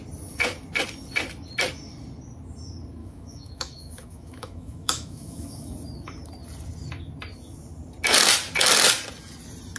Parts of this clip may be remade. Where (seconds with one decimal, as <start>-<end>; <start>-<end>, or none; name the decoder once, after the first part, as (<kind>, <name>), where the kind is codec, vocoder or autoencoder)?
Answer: 3.0-5.7 (autoencoder, DAC-VAE)